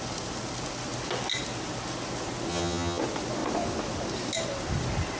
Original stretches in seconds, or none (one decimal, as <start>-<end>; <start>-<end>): 0.0-2.5; 3.0-5.2

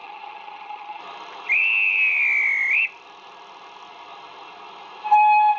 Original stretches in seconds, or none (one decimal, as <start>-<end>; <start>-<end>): 1.0-5.6

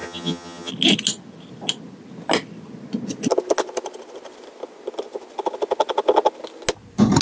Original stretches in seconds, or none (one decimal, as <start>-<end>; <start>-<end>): 0.7-7.2

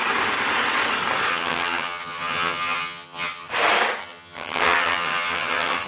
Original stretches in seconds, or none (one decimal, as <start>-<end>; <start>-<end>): 0.0-1.3; 3.5-4.0